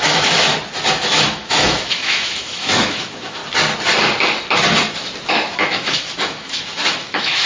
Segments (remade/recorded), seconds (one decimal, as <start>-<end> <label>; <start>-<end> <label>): 0.0-0.5 remade; 0.5-1.0 recorded; 1.0-3.4 remade; 3.4-5.3 recorded; 5.3-7.5 remade